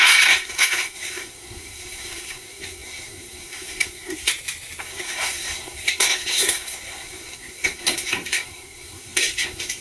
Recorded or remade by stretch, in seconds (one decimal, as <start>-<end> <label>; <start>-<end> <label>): 0.0-4.3 remade; 4.3-4.8 recorded; 4.8-9.8 remade